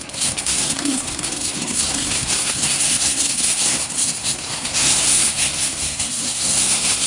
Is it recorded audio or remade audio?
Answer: remade